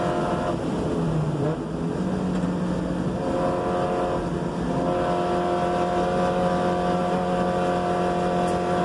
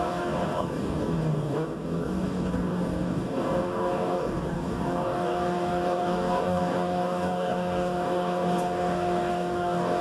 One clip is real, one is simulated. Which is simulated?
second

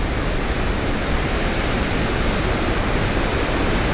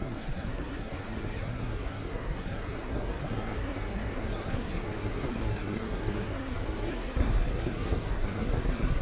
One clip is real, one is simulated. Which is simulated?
second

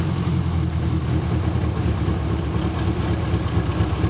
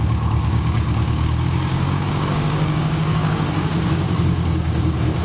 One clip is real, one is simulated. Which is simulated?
second